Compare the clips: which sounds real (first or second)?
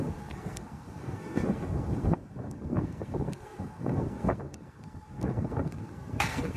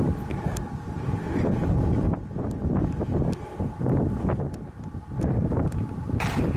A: second